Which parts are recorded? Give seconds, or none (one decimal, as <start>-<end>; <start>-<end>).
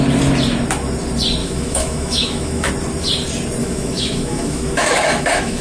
0.0-1.4; 2.7-3.6